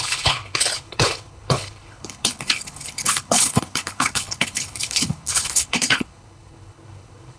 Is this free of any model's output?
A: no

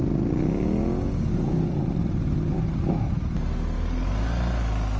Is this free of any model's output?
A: yes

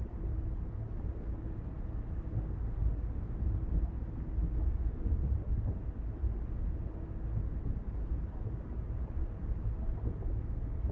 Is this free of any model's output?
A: yes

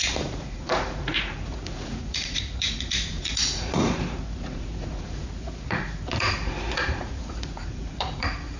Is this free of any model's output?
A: no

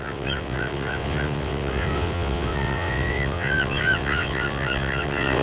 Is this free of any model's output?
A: no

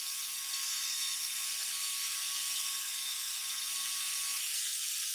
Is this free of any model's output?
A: no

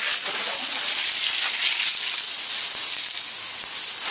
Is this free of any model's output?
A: yes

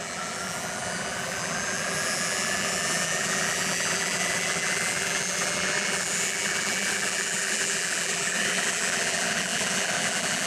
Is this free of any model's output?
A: no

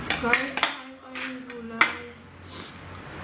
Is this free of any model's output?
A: yes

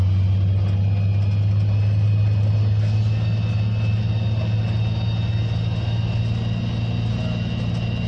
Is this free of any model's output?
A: yes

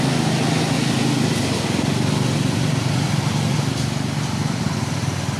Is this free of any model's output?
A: yes